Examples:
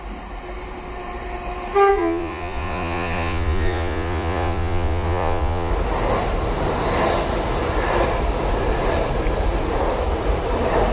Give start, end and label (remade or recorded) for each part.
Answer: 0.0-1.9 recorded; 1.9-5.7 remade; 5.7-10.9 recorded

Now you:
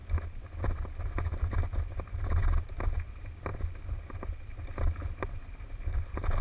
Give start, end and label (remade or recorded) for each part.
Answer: 0.0-6.4 recorded

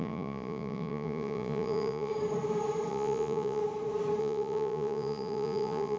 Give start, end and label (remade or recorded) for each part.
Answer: 0.0-2.1 remade; 2.1-2.9 recorded; 2.9-3.6 remade; 3.6-4.2 recorded; 4.2-6.0 remade

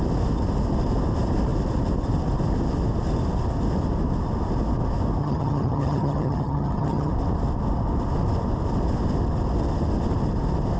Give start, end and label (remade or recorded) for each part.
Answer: 0.0-5.2 recorded; 5.2-7.1 remade; 7.1-10.8 recorded

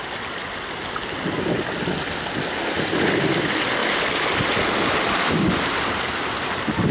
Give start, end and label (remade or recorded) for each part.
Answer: 0.0-6.9 recorded